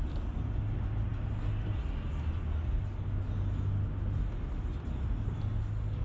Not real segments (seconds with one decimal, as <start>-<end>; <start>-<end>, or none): none